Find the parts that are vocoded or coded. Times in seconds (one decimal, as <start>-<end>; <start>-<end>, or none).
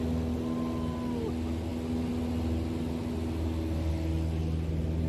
none